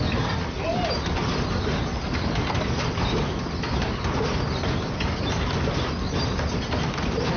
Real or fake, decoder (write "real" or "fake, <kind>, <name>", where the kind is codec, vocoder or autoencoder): real